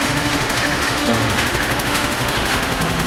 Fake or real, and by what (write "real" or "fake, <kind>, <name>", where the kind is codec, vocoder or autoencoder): fake, autoencoder, DAC-VAE